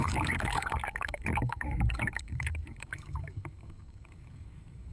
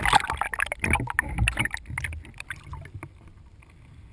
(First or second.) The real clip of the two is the second